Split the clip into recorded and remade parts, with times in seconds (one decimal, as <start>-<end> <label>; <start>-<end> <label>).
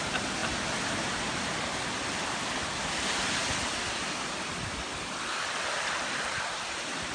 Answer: 0.0-7.1 recorded